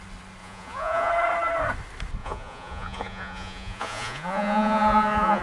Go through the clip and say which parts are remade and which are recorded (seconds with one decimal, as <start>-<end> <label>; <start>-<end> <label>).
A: 0.0-0.4 recorded; 0.4-1.1 remade; 1.1-2.2 recorded; 2.2-5.4 remade